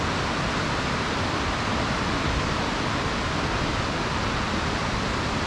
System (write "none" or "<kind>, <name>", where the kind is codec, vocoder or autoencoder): none